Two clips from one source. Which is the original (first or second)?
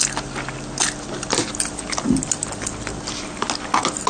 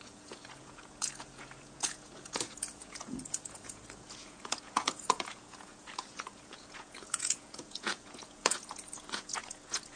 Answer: first